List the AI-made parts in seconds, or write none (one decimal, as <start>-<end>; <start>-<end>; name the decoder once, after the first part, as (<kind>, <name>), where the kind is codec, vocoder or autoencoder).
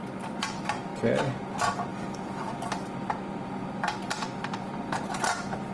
1.9-2.5 (vocoder, BigVGAN v2)